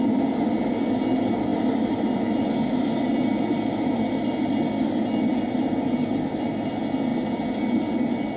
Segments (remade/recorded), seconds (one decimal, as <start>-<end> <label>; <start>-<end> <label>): 0.0-8.4 recorded

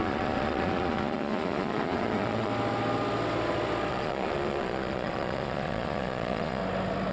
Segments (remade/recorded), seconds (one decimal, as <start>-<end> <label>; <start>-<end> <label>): 0.0-2.5 remade; 2.5-3.9 recorded; 3.9-6.6 remade; 6.6-7.1 recorded

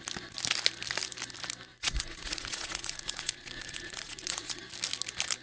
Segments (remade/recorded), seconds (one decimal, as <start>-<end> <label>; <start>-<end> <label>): 0.0-1.7 recorded; 1.7-4.6 remade; 4.6-5.4 recorded

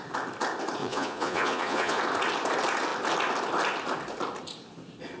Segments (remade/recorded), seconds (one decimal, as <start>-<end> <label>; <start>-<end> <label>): 0.0-0.8 recorded; 0.8-2.0 remade; 2.0-5.2 recorded